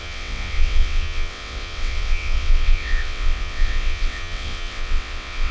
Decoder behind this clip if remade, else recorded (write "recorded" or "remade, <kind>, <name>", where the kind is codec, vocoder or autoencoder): remade, vocoder, WaveNeXt